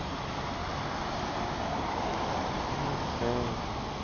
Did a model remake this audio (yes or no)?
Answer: no